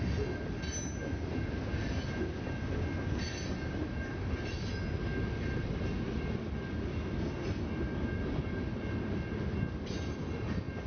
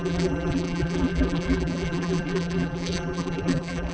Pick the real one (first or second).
first